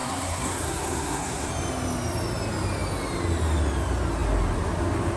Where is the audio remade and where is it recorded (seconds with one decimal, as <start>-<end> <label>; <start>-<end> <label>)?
0.0-1.5 remade; 1.5-5.2 recorded